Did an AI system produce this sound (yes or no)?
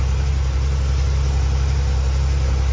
no